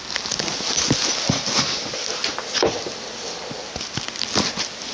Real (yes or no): yes